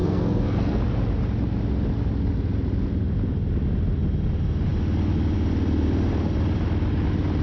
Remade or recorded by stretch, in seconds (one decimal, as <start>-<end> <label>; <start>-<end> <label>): 0.0-0.8 remade; 0.8-7.4 recorded